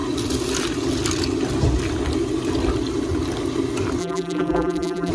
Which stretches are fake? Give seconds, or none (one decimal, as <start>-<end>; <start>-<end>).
4.0-5.1